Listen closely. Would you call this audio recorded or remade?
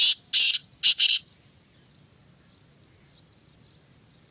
recorded